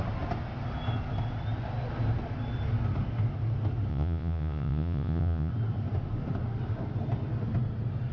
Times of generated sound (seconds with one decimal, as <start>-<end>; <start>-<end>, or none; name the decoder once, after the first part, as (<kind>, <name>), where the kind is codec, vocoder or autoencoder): 3.9-5.5 (vocoder, Vocos)